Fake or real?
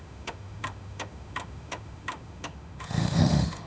fake